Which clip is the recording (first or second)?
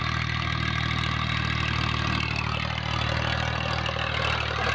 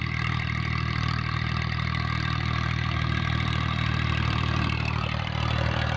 first